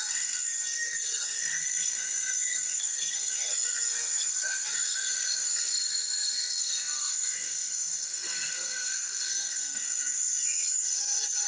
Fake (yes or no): yes